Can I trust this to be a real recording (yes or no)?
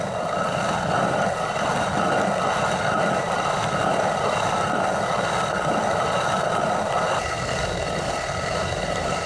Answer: yes